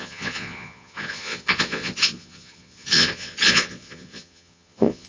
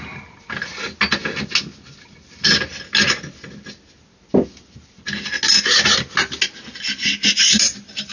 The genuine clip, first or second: second